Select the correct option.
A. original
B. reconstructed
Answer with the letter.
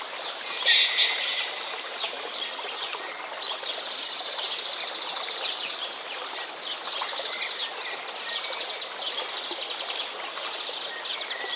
A